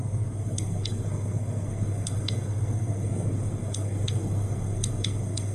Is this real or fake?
fake